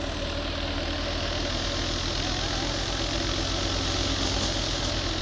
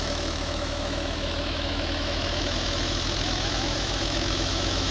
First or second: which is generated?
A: second